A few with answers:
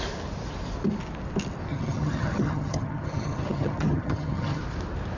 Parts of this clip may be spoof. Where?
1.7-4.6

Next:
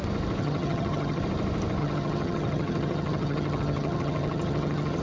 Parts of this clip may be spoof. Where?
0.4-1.2; 1.8-5.0

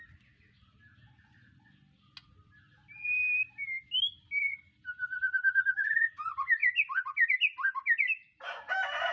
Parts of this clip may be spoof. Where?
none